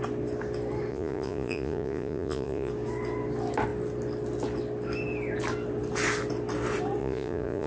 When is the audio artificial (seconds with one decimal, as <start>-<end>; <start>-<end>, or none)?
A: 0.9-2.7; 7.0-7.7